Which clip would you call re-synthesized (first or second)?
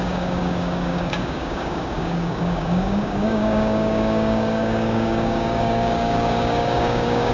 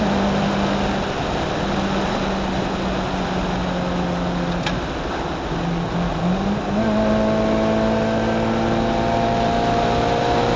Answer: first